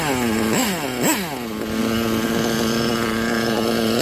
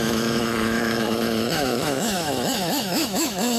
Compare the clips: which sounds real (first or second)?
first